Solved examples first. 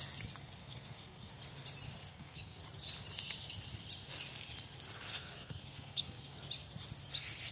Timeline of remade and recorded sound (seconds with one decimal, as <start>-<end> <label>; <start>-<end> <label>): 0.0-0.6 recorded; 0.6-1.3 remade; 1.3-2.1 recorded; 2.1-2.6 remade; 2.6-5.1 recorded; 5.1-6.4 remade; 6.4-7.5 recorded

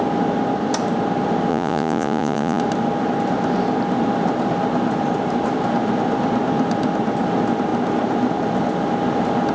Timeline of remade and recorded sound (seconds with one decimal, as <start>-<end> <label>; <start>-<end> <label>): 0.0-1.5 recorded; 1.5-2.6 remade; 2.6-9.5 recorded

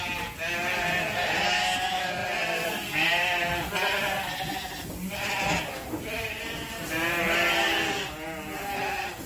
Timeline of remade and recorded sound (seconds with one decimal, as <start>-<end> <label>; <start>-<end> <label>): 0.0-2.2 recorded; 2.2-6.4 remade; 6.4-9.3 recorded

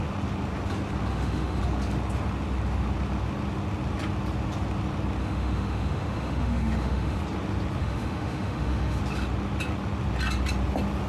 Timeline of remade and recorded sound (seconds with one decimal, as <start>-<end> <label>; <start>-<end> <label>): 0.0-1.1 recorded; 1.1-1.6 remade; 1.6-5.2 recorded; 5.2-7.2 remade; 7.2-7.8 recorded; 7.8-9.0 remade; 9.0-11.1 recorded